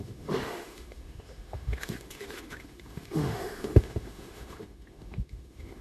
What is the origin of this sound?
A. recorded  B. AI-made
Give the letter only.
B